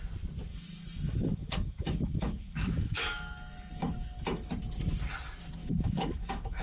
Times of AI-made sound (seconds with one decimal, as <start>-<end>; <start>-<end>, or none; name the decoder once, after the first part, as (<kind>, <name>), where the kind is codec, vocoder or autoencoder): 0.5-4.5 (autoencoder, DAC-VAE); 5.6-6.6